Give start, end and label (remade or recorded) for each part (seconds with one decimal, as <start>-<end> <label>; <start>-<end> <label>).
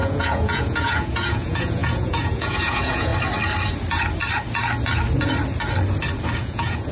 0.0-3.1 remade; 3.1-6.4 recorded; 6.4-6.9 remade